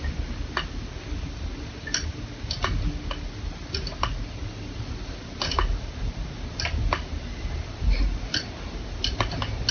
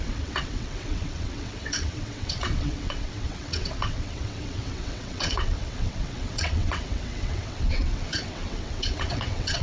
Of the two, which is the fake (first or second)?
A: second